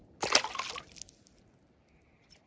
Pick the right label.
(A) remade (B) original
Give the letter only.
B